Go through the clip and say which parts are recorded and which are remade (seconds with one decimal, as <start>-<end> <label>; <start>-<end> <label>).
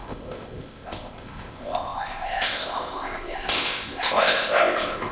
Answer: 0.0-5.1 remade